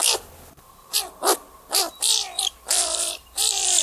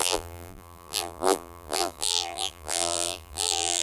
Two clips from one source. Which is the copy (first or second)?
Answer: second